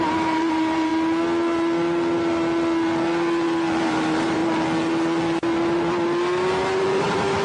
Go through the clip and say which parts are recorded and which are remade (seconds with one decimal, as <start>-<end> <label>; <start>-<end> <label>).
0.0-0.9 remade; 0.9-3.8 recorded; 3.8-4.4 remade; 4.4-7.0 recorded; 7.0-7.4 remade

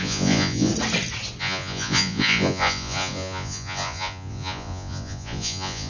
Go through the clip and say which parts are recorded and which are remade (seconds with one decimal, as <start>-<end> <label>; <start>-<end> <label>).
0.0-0.7 remade; 0.7-1.4 recorded; 1.4-5.9 remade

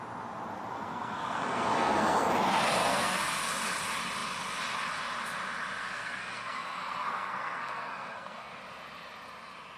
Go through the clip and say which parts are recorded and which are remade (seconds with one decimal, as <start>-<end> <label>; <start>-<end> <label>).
0.0-0.7 recorded; 0.7-2.3 remade; 2.3-2.8 recorded; 2.8-3.5 remade; 3.5-5.8 recorded; 5.8-8.5 remade; 8.5-9.8 recorded